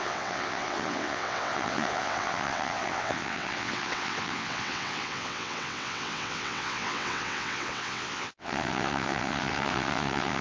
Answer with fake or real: fake